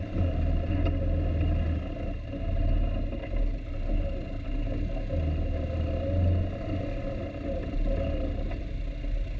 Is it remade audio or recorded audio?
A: recorded